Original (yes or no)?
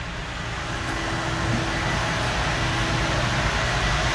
yes